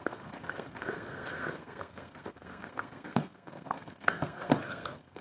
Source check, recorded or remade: remade